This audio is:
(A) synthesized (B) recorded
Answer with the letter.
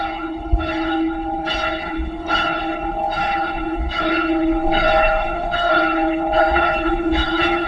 A